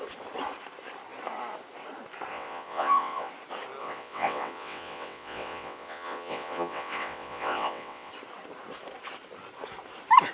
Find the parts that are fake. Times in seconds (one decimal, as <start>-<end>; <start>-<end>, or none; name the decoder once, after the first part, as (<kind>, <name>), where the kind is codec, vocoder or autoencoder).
2.3-3.3 (vocoder, WaveNeXt); 3.8-8.1